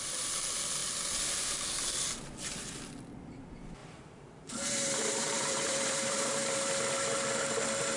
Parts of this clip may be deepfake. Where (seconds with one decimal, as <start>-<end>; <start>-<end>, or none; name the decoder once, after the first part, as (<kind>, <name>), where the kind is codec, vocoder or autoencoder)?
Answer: 3.8-6.4 (vocoder, BigVGAN v2)